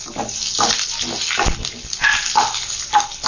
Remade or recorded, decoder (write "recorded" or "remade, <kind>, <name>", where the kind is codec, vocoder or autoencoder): recorded